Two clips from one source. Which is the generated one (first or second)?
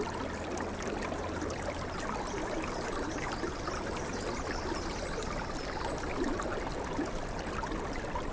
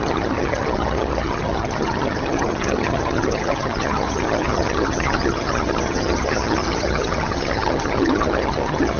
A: second